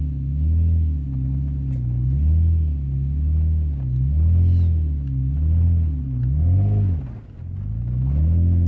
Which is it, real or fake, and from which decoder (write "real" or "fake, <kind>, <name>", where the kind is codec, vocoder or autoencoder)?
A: real